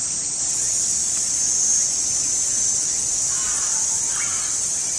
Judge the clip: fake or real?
real